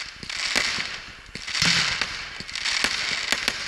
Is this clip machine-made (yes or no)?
no